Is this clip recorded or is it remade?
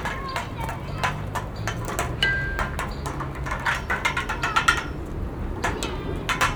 recorded